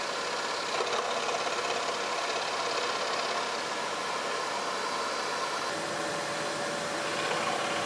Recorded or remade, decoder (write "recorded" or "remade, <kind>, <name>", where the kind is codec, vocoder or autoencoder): recorded